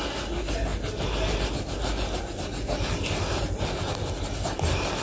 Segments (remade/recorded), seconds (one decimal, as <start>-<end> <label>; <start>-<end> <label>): 0.0-5.0 recorded